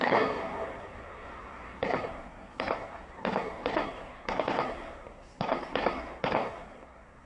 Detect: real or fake fake